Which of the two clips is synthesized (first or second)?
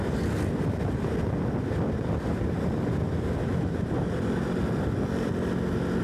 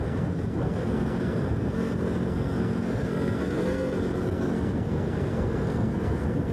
second